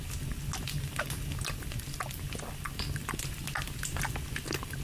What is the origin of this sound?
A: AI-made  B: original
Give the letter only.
B